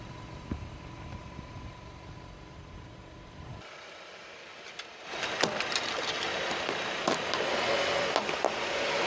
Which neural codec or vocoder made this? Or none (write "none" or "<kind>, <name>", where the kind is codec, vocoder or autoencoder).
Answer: none